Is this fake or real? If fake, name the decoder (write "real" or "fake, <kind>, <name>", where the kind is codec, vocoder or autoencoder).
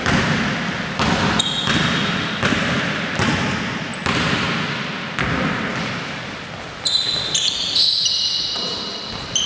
real